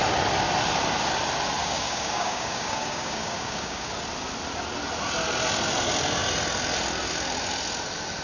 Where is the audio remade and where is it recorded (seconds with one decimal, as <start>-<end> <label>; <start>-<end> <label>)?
0.0-1.6 recorded; 1.6-3.9 remade; 3.9-8.2 recorded